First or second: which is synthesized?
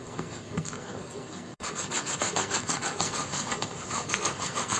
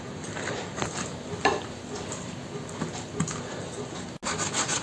first